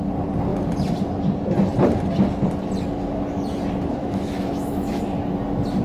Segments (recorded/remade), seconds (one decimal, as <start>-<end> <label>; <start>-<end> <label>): 0.0-4.0 recorded; 4.0-5.0 remade; 5.0-5.8 recorded